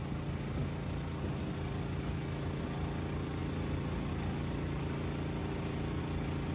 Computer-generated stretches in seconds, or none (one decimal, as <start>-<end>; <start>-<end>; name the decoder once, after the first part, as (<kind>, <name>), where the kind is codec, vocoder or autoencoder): 5.4-6.0 (vocoder, BigVGAN v2)